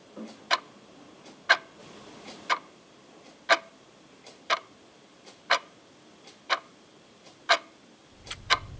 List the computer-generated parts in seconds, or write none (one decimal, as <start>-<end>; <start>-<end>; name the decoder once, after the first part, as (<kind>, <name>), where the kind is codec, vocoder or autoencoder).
0.0-0.7 (vocoder, BigVGAN v2); 1.8-2.5; 4.3-7.2; 8.0-8.8